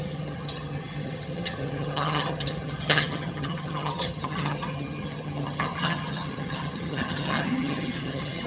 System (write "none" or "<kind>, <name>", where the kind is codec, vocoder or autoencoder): vocoder, HiFi-GAN